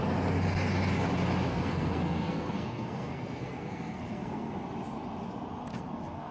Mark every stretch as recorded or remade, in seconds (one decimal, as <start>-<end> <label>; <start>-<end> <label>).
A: 0.0-1.5 recorded; 1.5-4.5 remade; 4.5-5.7 recorded; 5.7-6.3 remade